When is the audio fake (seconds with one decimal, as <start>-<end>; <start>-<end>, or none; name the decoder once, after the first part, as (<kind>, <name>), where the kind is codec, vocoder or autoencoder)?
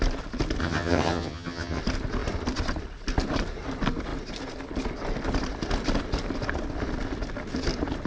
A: 0.6-1.8 (vocoder, HiFi-GAN)